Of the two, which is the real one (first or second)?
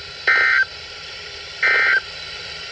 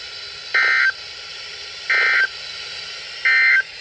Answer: second